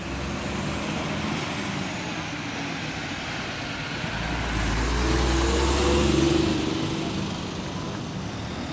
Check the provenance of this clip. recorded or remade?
recorded